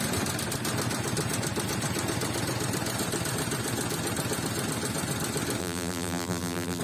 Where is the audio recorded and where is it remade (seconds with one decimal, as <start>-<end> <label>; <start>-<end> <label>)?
0.0-5.6 recorded; 5.6-6.8 remade

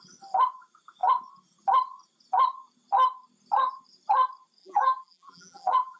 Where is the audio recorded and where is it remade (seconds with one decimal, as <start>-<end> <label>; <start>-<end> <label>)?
0.0-4.6 recorded; 4.6-6.0 remade

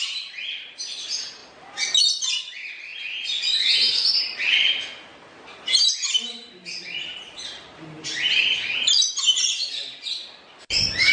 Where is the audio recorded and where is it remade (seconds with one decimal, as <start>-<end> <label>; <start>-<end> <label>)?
0.0-2.9 recorded; 2.9-4.1 remade; 4.1-5.1 recorded; 5.1-8.0 remade; 8.0-11.1 recorded